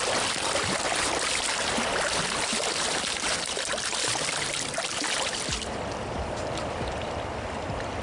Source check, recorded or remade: remade